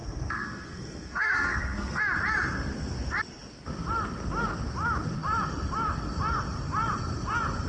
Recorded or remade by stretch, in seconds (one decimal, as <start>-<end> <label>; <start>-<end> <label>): 0.0-2.0 remade; 2.0-7.7 recorded

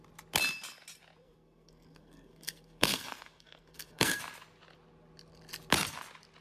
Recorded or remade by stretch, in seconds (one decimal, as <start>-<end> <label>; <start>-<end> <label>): 0.0-1.2 recorded; 1.2-4.2 remade; 4.2-6.4 recorded

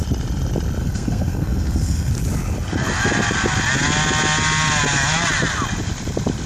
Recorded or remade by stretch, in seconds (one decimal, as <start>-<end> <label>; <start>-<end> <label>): 0.0-0.8 recorded; 0.8-2.1 remade; 2.1-6.5 recorded

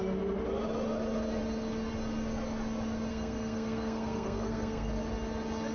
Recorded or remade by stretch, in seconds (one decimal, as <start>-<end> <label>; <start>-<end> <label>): 0.0-3.1 recorded; 3.1-4.9 remade; 4.9-5.7 recorded

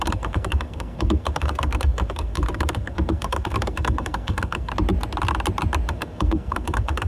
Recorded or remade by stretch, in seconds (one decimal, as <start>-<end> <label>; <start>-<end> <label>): 0.0-4.7 remade; 4.7-5.9 recorded; 5.9-7.1 remade

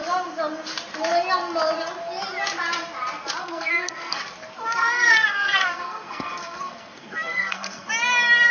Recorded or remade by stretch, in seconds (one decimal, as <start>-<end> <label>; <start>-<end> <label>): 0.0-3.4 recorded; 3.4-4.2 remade; 4.2-4.8 recorded; 4.8-7.9 remade; 7.9-8.5 recorded

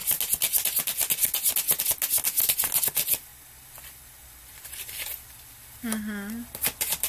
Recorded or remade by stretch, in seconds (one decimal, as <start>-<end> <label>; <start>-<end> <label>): 0.0-7.1 recorded